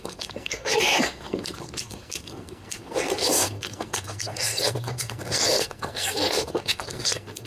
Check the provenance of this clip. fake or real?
fake